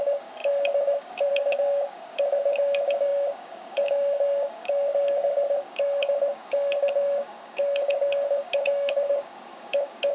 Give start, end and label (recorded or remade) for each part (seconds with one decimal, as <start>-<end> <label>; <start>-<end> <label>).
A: 0.0-10.1 remade

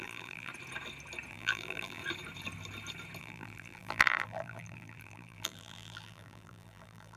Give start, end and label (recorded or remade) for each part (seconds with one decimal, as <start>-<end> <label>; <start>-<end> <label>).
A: 0.0-0.5 remade; 0.5-1.3 recorded; 1.3-2.0 remade; 2.0-3.2 recorded; 3.2-7.2 remade

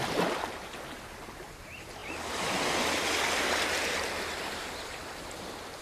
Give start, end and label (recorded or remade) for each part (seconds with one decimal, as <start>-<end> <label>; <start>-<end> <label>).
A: 0.0-5.8 recorded

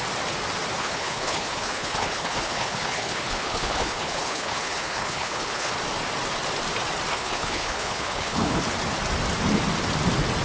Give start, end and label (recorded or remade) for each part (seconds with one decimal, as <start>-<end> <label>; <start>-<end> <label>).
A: 0.0-0.8 recorded; 0.8-5.7 remade; 5.7-7.1 recorded; 7.1-8.6 remade; 8.6-10.4 recorded

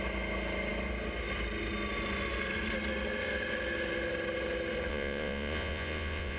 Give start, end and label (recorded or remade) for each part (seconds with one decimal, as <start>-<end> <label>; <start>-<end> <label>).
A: 0.0-4.9 recorded; 4.9-6.4 remade

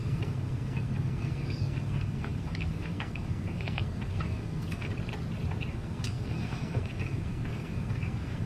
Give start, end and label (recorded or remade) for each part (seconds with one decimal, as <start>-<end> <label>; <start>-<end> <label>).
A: 0.0-4.9 remade; 4.9-5.7 recorded; 5.7-8.5 remade

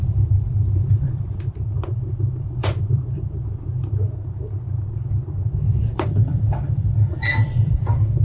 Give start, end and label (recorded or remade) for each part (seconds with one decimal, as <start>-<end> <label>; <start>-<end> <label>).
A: 0.0-3.8 remade; 3.8-5.8 recorded; 5.8-8.2 remade